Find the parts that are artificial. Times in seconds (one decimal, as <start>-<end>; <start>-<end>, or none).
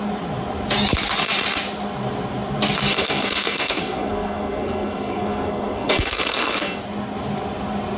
2.9-6.8